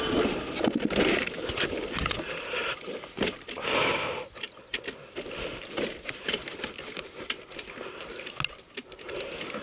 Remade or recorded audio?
recorded